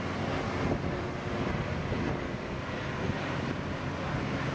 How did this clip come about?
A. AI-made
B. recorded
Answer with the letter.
B